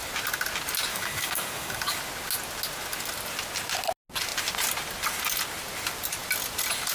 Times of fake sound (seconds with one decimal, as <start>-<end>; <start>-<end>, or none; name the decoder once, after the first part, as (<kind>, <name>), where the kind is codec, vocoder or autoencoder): 0.9-2.0 (codec, DAC)